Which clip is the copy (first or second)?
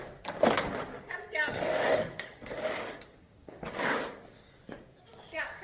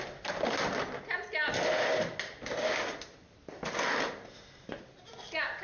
first